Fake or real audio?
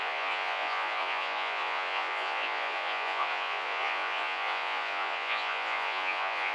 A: fake